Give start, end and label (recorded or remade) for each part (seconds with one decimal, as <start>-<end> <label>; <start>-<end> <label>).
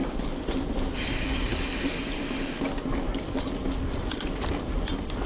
0.0-5.3 recorded